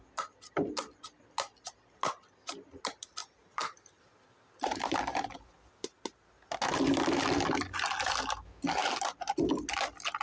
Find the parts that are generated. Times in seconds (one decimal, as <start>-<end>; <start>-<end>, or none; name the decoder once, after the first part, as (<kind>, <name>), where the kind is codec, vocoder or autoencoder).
3.2-4.0 (vocoder, BigVGAN v2); 8.8-9.5